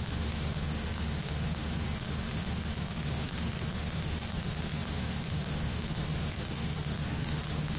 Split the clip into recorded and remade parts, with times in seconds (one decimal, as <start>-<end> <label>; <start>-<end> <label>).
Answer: 0.0-7.8 remade